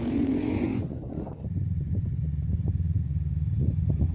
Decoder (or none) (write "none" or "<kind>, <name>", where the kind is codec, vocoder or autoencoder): vocoder, Vocos